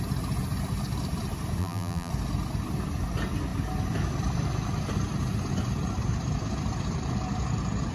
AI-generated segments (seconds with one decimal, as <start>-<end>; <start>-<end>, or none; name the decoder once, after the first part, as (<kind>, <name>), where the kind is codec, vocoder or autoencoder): 1.6-2.1 (vocoder, BigVGAN v2)